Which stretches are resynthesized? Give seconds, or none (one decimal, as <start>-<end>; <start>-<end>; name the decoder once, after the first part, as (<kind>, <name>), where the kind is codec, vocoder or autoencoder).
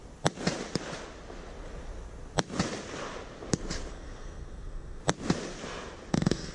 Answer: 3.9-5.0 (codec, SNAC); 6.1-6.5